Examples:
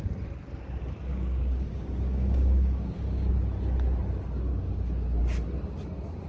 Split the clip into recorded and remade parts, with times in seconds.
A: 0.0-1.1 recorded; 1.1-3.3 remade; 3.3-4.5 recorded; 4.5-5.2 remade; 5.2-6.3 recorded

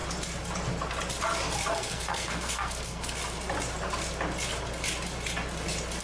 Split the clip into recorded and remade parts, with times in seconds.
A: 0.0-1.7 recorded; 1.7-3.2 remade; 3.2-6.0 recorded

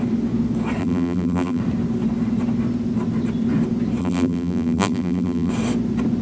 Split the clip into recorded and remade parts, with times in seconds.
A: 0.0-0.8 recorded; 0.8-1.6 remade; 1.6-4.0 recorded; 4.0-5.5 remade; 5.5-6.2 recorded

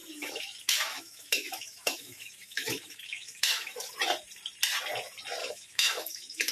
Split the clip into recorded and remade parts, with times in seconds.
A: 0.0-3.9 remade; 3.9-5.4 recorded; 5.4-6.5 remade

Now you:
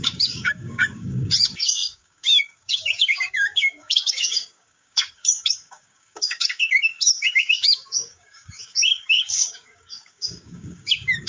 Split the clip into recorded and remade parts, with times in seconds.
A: 0.0-11.3 remade